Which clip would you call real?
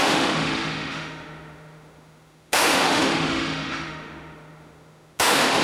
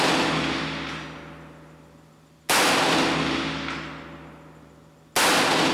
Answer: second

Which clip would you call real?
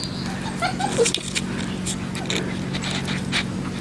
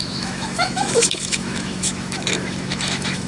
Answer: first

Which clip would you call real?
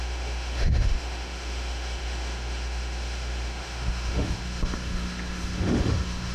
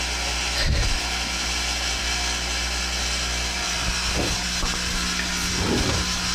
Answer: second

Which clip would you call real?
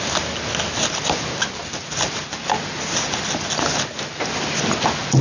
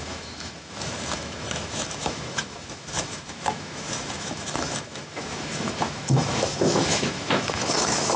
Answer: first